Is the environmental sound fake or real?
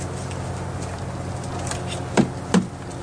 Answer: real